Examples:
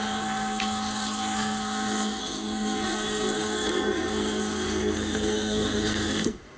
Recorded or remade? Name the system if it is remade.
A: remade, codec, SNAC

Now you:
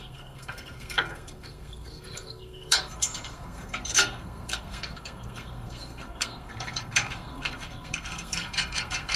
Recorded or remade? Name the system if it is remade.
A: remade, codec, SNAC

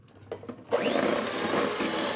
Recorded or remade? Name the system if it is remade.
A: recorded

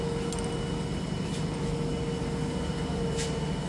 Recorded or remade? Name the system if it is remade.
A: recorded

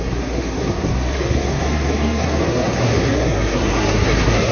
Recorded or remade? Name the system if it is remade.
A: remade, codec, SNAC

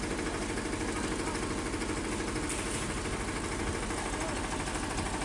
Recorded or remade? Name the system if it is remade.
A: recorded